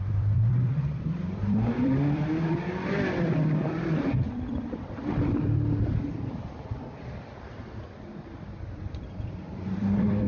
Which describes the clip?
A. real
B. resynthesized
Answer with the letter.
B